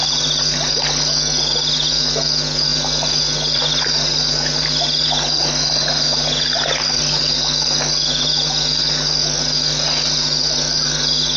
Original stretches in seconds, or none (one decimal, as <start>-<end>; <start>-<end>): 0.0-11.4